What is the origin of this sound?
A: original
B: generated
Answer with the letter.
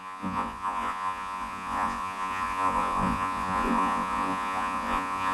B